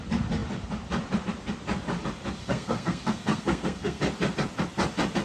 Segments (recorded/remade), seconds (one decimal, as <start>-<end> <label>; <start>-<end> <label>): 0.0-2.4 recorded; 2.4-4.0 remade; 4.0-5.2 recorded